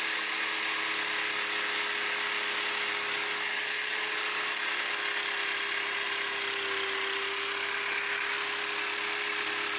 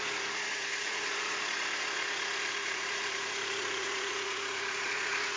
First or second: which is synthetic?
second